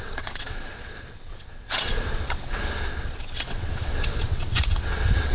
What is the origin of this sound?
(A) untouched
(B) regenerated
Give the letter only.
B